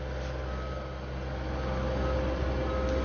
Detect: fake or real real